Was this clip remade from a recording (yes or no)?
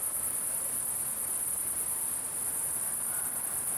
no